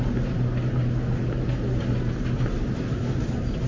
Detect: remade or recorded recorded